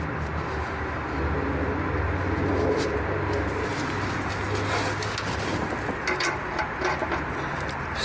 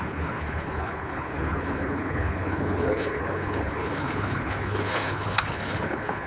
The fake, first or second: second